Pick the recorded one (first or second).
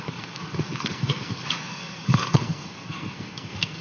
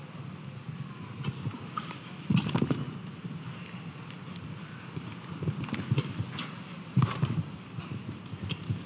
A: second